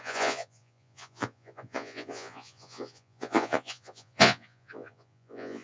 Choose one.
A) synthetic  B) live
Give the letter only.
A